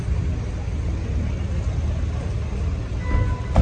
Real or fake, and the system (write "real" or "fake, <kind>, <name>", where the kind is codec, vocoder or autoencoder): real